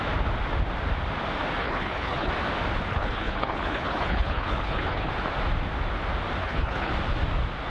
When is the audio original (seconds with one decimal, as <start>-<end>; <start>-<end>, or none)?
0.0-1.6; 2.3-2.9; 5.1-6.4; 6.9-7.7